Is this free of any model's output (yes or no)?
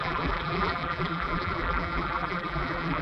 no